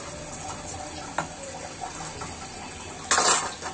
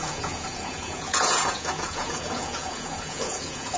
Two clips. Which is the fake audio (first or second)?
second